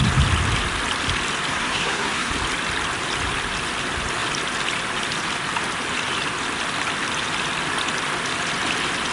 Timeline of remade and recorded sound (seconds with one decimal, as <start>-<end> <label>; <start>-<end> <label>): 0.0-1.5 recorded; 1.5-2.3 remade; 2.3-9.1 recorded